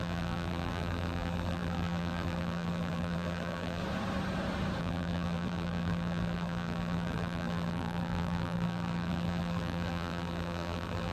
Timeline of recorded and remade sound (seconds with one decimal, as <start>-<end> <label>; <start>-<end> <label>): 0.0-3.8 remade; 3.8-4.8 recorded; 4.8-11.1 remade